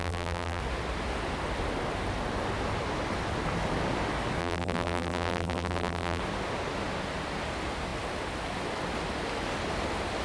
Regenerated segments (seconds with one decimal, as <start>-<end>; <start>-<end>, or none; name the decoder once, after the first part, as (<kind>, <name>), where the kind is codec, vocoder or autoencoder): 0.0-0.6 (vocoder, BigVGAN v2); 4.4-6.2